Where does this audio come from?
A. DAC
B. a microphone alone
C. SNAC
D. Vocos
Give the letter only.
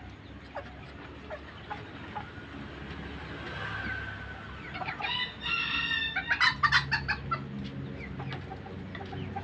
B